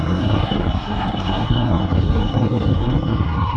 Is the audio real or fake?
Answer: fake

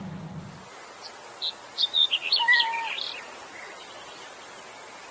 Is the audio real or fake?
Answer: real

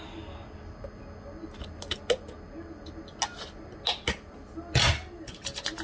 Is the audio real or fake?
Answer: real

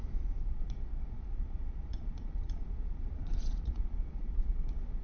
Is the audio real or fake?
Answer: fake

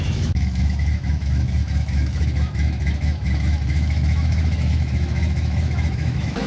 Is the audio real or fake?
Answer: fake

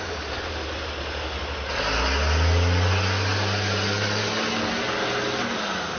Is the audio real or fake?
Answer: real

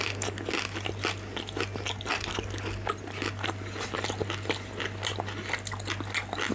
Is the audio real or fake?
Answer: real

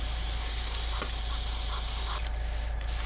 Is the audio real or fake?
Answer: fake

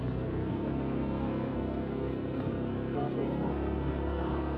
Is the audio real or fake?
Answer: fake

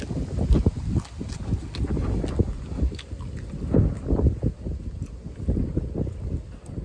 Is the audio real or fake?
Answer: real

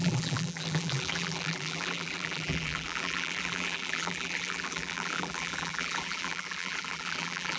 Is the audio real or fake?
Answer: fake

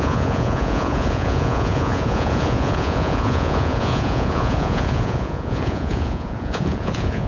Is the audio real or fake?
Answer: fake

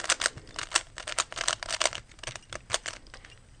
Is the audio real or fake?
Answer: real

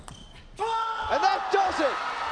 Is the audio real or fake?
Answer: real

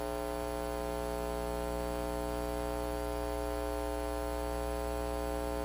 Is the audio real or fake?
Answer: real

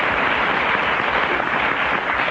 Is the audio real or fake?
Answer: real